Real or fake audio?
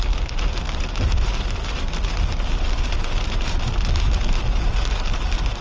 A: real